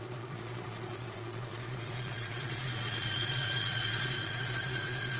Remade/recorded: remade